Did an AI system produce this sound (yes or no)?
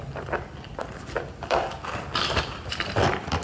no